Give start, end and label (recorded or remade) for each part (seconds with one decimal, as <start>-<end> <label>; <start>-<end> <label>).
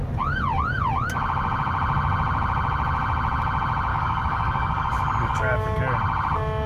0.0-3.9 recorded; 3.9-5.8 remade; 5.8-6.7 recorded